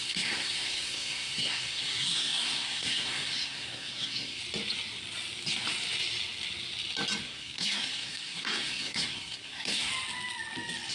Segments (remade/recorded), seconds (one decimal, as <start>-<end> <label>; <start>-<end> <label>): 0.0-4.4 remade; 4.4-7.2 recorded; 7.2-9.9 remade; 9.9-10.9 recorded